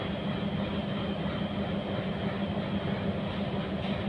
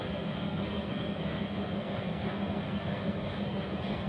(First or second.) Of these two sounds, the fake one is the second